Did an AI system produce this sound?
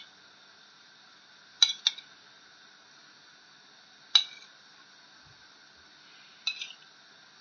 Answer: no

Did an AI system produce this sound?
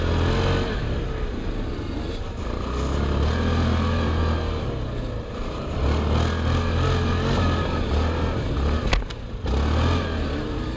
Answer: no